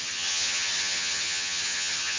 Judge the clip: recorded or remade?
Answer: remade